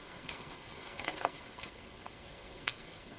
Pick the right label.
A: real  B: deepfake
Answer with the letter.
B